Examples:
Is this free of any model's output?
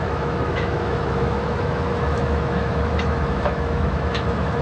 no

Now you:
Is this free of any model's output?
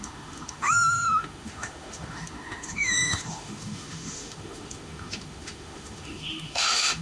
no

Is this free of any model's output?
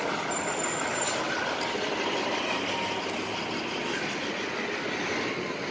yes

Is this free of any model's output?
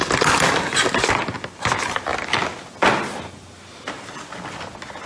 yes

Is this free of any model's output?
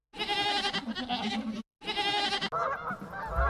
yes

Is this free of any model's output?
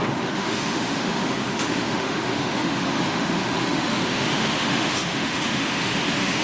no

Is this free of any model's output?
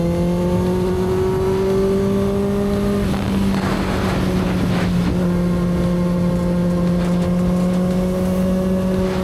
yes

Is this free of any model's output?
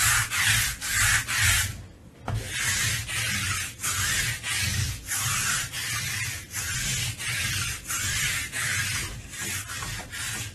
yes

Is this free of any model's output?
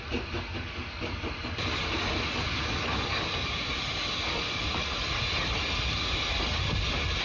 yes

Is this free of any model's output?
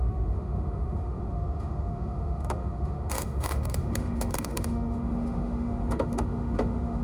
no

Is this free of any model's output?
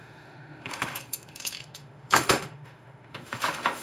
no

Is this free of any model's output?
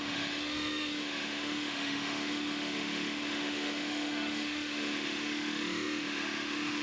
no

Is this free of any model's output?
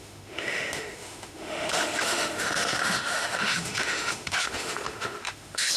no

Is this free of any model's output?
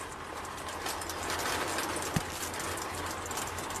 yes